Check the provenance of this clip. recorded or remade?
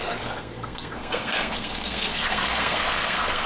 remade